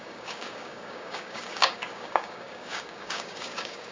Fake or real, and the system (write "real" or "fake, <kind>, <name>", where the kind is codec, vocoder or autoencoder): fake, codec, DAC